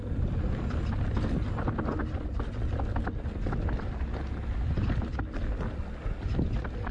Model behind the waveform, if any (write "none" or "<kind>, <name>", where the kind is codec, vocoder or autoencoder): none